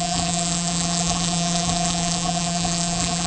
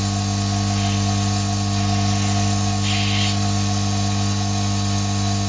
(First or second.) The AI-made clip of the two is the first